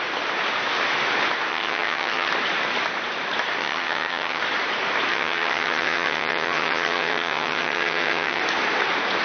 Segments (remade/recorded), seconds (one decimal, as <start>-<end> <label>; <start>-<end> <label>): 0.0-1.5 recorded; 1.5-2.3 remade; 2.3-3.6 recorded; 3.6-4.4 remade; 4.4-5.1 recorded; 5.1-8.4 remade; 8.4-9.2 recorded

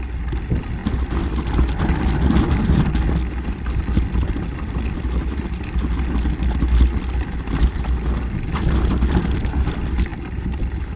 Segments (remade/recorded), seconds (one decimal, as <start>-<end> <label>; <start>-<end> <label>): 0.0-10.1 recorded; 10.1-10.6 remade; 10.6-11.0 recorded

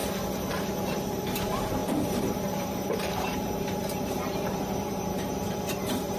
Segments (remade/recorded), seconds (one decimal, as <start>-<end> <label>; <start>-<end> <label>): 0.0-0.5 recorded; 0.5-6.2 remade

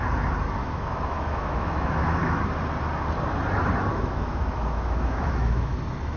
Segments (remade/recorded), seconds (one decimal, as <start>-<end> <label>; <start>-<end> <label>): 0.0-0.6 recorded; 0.6-2.4 remade; 2.4-3.9 recorded; 3.9-5.8 remade; 5.8-6.2 recorded

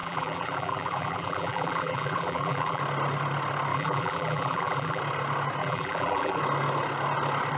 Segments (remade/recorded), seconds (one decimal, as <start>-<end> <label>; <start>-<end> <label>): 0.0-2.8 remade; 2.8-3.7 recorded; 3.7-5.0 remade; 5.0-5.6 recorded; 5.6-6.4 remade; 6.4-7.6 recorded

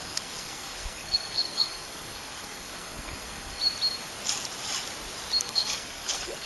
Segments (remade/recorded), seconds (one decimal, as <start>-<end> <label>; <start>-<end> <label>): 0.0-3.6 remade; 3.6-5.4 recorded; 5.4-6.5 remade

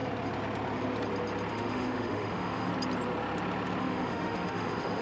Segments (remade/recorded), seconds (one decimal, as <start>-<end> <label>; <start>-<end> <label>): 0.0-1.5 recorded; 1.5-2.7 remade; 2.7-3.8 recorded; 3.8-5.0 remade

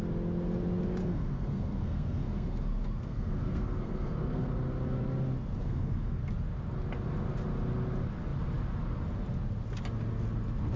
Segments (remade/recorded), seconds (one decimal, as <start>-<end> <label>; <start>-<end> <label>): 0.0-1.0 recorded; 1.0-4.5 remade; 4.5-5.6 recorded; 5.6-6.2 remade; 6.2-10.8 recorded